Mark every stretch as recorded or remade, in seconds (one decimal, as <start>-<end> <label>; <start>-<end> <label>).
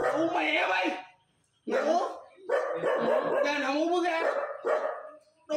0.0-4.4 recorded; 4.4-5.1 remade; 5.1-5.6 recorded